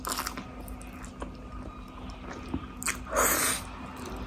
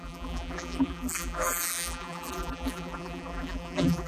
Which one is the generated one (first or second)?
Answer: second